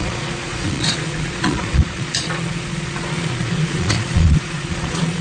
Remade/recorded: remade